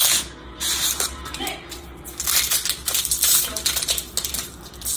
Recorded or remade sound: recorded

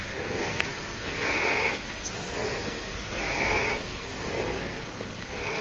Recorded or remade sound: remade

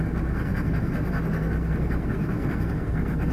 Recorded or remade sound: remade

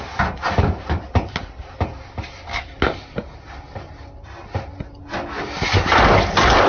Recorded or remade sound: recorded